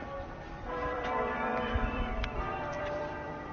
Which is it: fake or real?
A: fake